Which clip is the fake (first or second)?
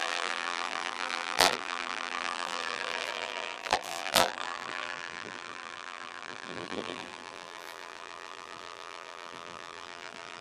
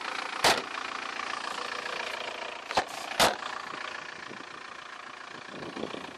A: first